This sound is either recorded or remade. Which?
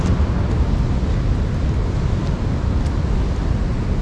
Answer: recorded